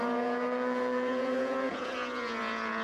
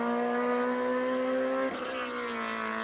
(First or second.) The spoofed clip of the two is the first